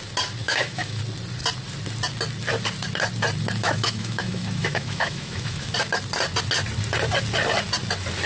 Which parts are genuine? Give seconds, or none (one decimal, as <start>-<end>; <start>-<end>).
0.0-0.4; 1.0-3.6; 5.7-8.3